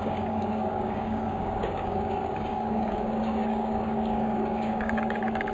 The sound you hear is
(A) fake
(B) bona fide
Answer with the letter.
A